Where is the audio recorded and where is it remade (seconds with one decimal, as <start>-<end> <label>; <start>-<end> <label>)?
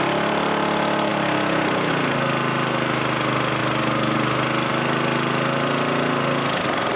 0.0-7.0 recorded